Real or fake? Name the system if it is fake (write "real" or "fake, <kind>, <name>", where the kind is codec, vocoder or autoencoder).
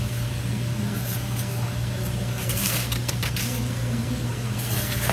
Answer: fake, codec, SNAC